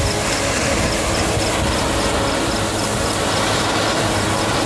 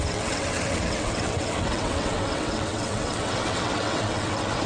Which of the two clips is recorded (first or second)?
first